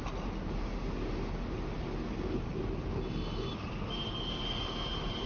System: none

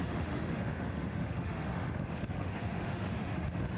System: autoencoder, DAC-VAE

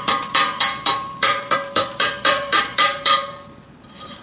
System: vocoder, BigVGAN v2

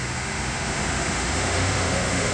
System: autoencoder, DAC-VAE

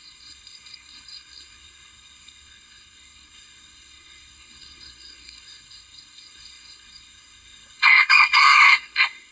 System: codec, SNAC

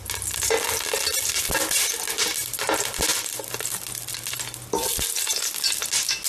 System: none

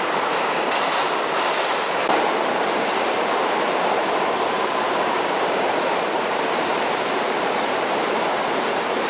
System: vocoder, BigVGAN v2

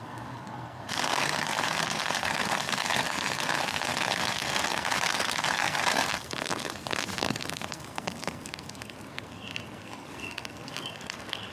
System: codec, SNAC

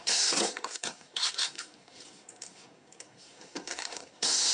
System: codec, SNAC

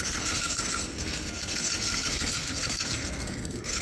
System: codec, SNAC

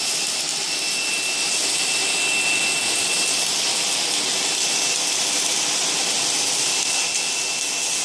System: none